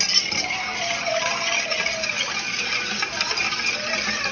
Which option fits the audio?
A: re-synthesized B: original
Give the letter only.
B